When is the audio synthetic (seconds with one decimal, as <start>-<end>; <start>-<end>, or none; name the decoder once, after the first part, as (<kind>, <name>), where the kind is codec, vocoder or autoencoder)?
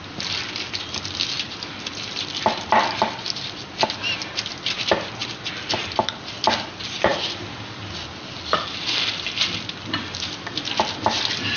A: none